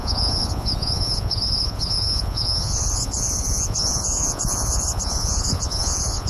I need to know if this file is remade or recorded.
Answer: remade